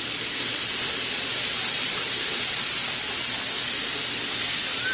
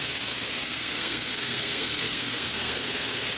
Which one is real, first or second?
first